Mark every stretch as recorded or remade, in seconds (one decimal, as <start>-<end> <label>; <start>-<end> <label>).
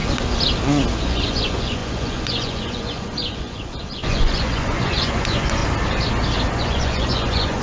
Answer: 0.0-1.0 recorded; 1.0-5.6 remade; 5.6-6.5 recorded; 6.5-7.6 remade